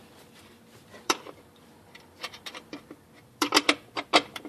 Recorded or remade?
remade